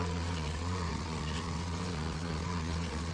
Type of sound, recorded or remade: remade